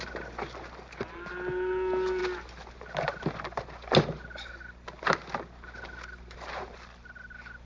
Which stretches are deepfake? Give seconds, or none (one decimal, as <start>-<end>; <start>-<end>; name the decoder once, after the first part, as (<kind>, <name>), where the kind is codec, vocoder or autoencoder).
none